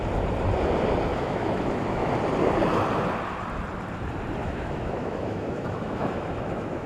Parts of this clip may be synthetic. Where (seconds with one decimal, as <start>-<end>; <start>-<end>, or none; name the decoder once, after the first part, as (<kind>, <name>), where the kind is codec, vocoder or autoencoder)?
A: 1.1-2.1 (autoencoder, DAC-VAE); 4.4-6.9